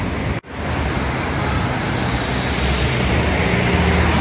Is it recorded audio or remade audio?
recorded